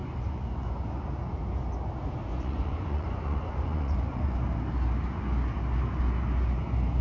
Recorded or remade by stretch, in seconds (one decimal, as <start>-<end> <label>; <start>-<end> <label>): 0.0-1.0 remade; 1.0-2.3 recorded; 2.3-4.4 remade; 4.4-7.0 recorded